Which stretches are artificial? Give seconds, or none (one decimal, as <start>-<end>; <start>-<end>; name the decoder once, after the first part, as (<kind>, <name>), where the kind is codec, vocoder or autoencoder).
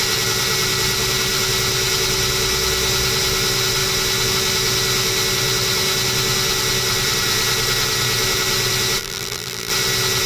9.0-9.7 (vocoder, BigVGAN v2)